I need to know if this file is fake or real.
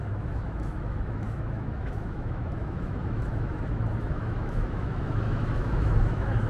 fake